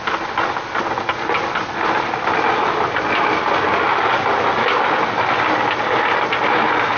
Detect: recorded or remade recorded